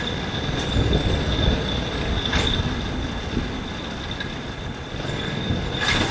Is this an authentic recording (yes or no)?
yes